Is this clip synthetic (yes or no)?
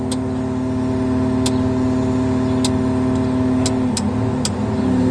no